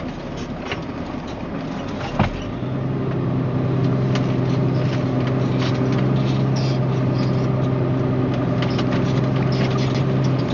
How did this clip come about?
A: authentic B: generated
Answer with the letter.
A